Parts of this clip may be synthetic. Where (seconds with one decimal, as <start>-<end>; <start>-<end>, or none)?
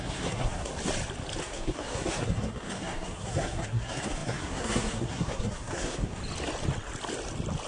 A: 0.0-0.7; 1.4-6.2